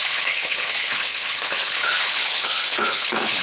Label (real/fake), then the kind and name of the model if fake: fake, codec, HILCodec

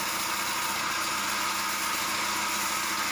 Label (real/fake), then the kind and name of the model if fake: real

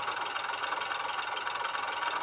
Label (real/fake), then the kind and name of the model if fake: real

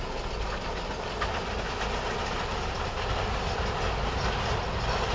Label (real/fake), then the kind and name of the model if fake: real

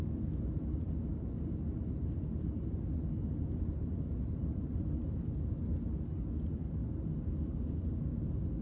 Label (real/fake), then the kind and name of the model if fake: real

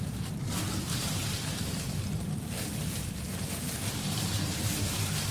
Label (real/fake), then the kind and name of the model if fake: fake, vocoder, BigVGAN v2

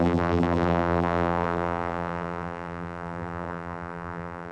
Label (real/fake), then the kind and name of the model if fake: fake, vocoder, BigVGAN v2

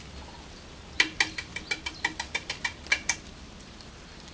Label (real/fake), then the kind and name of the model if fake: real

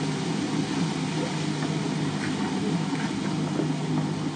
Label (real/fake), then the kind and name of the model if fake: real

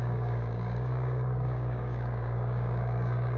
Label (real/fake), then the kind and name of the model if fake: fake, codec, DAC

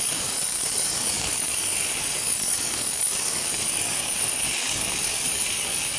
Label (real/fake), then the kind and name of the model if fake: fake, codec, DAC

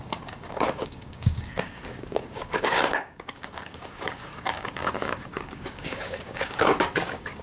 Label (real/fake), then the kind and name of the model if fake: fake, codec, DAC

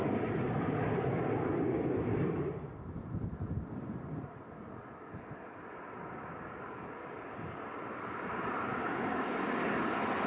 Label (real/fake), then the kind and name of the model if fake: fake, vocoder, BigVGAN v2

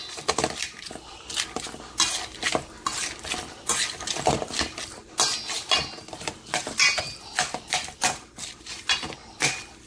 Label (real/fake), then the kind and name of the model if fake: real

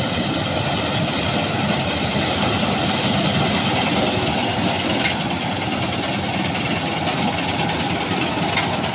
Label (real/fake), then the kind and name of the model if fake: real